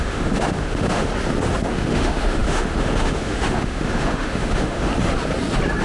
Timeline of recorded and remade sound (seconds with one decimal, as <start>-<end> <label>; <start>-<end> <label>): 0.0-1.1 remade; 1.1-1.7 recorded; 1.7-4.9 remade; 4.9-5.8 recorded